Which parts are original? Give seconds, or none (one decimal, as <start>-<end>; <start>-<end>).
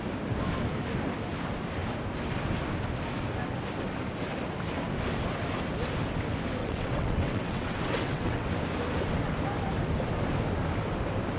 0.0-6.6; 8.5-11.4